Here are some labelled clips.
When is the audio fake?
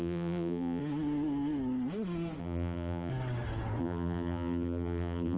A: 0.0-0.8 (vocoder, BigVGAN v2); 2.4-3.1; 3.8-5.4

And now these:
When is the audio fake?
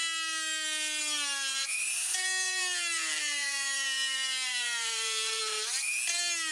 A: 1.5-5.4 (vocoder, BigVGAN v2)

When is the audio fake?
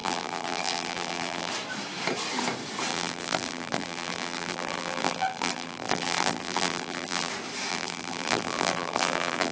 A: 0.0-1.5 (vocoder, BigVGAN v2); 2.9-7.3; 7.7-9.5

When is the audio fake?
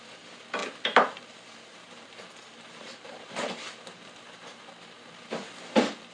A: 0.6-1.2 (vocoder, BigVGAN v2); 1.7-3.6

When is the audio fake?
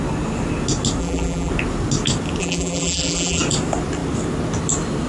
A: 1.0-1.5 (vocoder, BigVGAN v2); 2.4-3.4